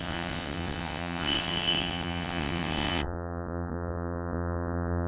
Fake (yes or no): yes